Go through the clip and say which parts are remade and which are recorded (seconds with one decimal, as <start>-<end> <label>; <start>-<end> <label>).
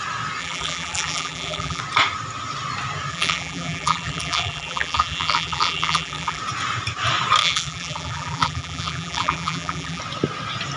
0.0-0.4 recorded; 0.4-1.8 remade; 1.8-3.1 recorded; 3.1-6.4 remade; 6.4-7.4 recorded; 7.4-10.0 remade; 10.0-10.8 recorded